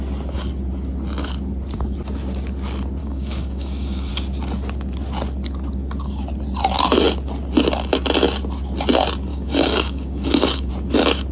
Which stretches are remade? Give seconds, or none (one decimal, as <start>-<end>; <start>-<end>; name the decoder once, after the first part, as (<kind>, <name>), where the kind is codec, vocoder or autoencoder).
3.0-4.1 (codec, DAC); 9.3-10.7